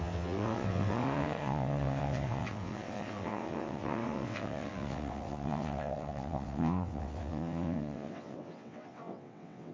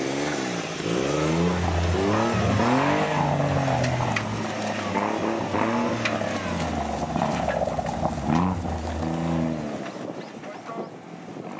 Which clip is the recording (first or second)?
second